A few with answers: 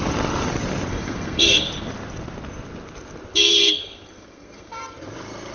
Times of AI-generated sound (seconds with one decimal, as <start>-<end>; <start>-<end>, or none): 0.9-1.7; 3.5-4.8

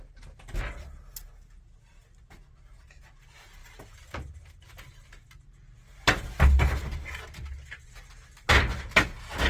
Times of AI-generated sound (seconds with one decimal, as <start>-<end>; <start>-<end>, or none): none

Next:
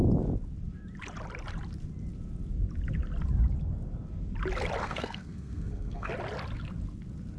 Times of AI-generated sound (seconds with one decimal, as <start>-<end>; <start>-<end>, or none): 4.8-6.1